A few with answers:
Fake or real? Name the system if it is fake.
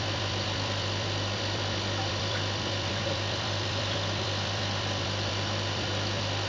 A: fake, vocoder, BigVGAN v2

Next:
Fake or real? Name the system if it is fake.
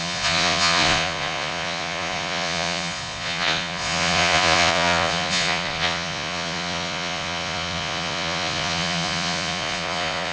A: fake, vocoder, Vocos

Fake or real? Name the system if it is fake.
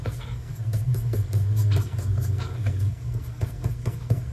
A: fake, codec, SNAC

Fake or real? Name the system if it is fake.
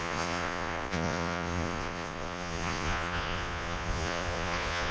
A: fake, vocoder, Vocos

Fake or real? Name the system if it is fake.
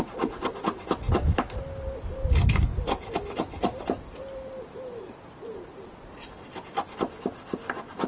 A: real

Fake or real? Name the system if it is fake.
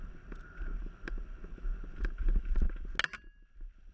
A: real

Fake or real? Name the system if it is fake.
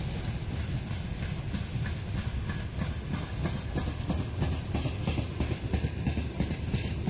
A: real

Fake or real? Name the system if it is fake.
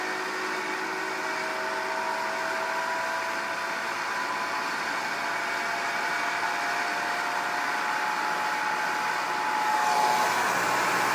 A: fake, vocoder, BigVGAN v2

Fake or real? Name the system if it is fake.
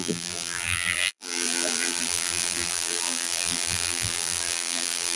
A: fake, vocoder, BigVGAN v2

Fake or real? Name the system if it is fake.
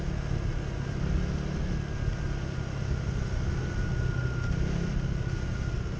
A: real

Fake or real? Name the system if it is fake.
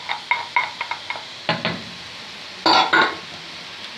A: real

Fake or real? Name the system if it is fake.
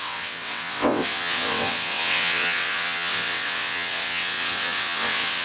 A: fake, vocoder, WaveNeXt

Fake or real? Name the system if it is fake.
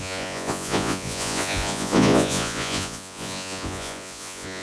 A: fake, vocoder, Vocos